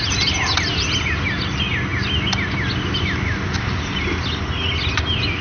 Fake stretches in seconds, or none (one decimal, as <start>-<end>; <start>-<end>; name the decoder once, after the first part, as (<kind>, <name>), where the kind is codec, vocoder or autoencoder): none